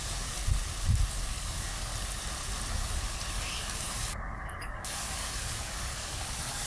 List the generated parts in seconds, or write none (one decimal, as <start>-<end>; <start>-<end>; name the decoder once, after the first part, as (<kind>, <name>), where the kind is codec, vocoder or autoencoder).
0.0-0.4 (codec, DAC); 1.1-1.9; 2.7-6.7